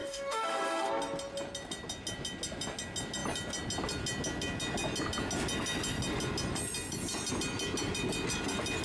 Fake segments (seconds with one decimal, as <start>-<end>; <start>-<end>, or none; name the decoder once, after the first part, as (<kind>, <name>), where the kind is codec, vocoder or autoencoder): 0.0-0.9 (autoencoder, DAC-VAE)